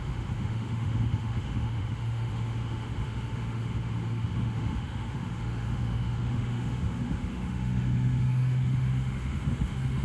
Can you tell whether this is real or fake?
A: fake